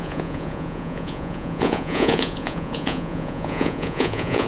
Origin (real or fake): fake